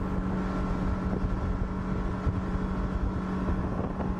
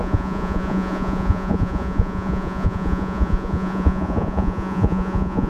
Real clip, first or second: first